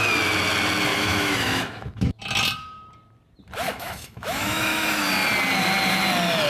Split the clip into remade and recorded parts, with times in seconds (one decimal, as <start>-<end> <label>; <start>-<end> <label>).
0.0-0.9 recorded; 0.9-2.2 remade; 2.2-3.7 recorded; 3.7-5.1 remade; 5.1-6.5 recorded